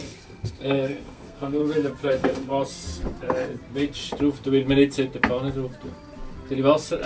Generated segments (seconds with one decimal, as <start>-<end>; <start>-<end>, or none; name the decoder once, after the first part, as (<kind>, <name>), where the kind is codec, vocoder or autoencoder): 0.0-1.6 (codec, SNAC); 2.1-2.5